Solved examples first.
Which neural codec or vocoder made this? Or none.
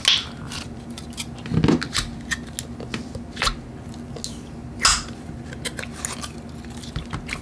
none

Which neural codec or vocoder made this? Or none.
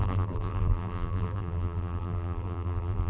vocoder, BigVGAN v2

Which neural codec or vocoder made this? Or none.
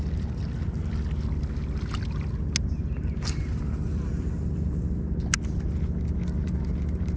none